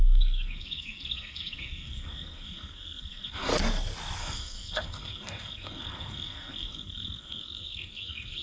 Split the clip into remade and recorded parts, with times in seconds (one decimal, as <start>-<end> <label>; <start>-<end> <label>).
0.0-3.5 remade; 3.5-4.2 recorded; 4.2-8.4 remade